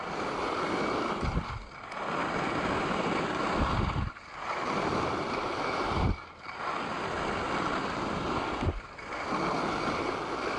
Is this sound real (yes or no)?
yes